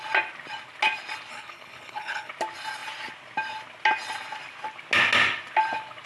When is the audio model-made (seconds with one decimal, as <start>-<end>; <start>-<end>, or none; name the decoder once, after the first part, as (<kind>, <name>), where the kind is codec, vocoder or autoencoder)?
1.3-2.3 (codec, HILCodec)